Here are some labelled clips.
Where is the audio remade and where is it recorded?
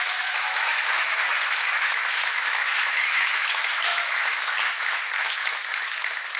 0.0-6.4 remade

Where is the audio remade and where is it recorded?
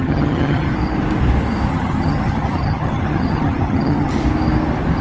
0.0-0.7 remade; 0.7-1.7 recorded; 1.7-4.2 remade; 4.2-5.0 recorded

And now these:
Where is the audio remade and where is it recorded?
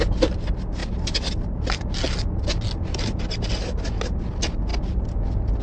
0.0-5.6 recorded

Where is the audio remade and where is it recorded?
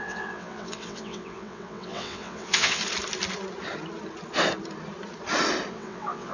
0.0-2.8 remade; 2.8-5.7 recorded; 5.7-6.3 remade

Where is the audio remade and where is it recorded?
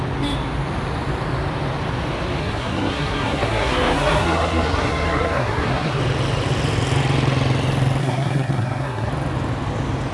0.0-2.4 recorded; 2.4-6.0 remade; 6.0-8.0 recorded; 8.0-9.1 remade; 9.1-10.1 recorded